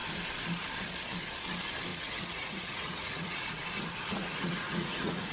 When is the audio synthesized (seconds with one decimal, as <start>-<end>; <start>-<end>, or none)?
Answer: 1.9-3.6; 4.0-5.3